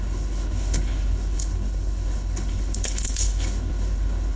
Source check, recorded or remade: remade